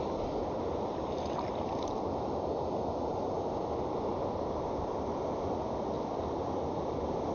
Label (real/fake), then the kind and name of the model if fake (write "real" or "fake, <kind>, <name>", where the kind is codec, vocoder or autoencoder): real